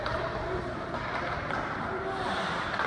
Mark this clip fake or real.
real